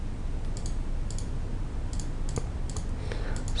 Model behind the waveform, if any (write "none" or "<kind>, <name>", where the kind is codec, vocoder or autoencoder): none